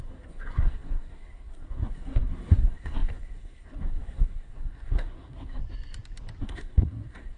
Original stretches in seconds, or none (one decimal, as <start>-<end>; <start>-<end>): 5.6-6.4